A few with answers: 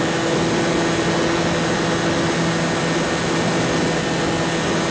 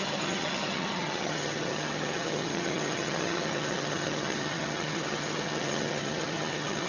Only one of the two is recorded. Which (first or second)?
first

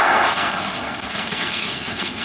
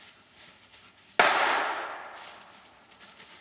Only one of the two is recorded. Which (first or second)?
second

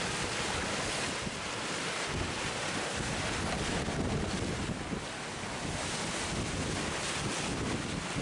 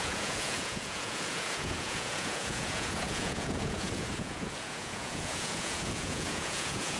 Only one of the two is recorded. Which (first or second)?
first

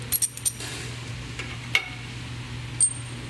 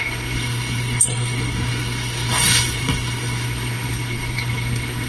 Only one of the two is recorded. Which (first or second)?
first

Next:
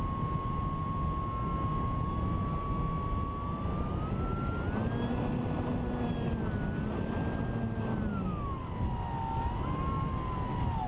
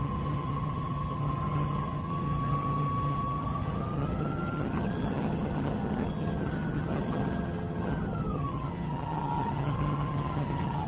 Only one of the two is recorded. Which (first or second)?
first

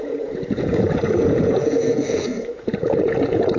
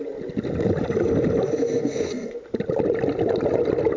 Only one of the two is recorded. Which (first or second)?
second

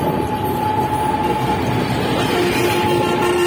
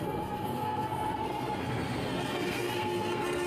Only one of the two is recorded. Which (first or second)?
first